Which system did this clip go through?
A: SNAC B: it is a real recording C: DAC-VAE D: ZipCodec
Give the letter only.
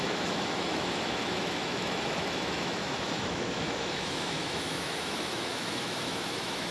C